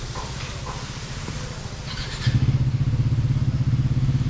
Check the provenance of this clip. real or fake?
real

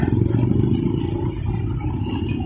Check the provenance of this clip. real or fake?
real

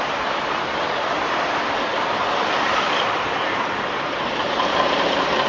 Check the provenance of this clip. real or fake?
fake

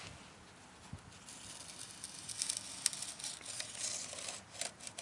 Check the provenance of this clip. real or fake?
real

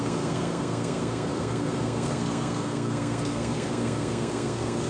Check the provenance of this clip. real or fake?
fake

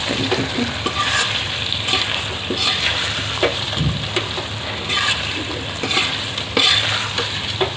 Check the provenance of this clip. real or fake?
fake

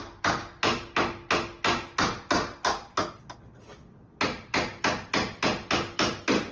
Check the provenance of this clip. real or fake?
real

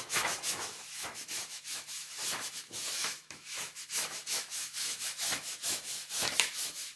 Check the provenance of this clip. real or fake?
fake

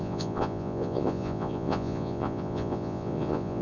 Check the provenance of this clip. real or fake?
fake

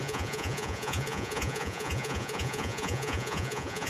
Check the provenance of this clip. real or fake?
fake